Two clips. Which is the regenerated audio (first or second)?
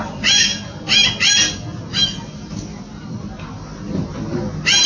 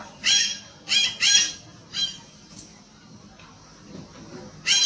second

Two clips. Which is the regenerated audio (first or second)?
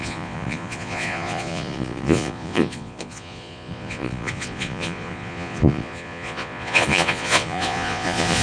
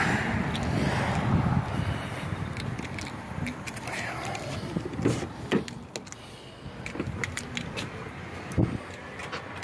first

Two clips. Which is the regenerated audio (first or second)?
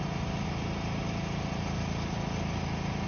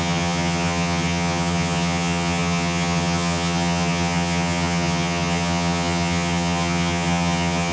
second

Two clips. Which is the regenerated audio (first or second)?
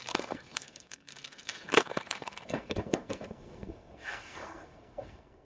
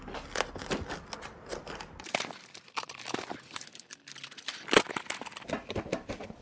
first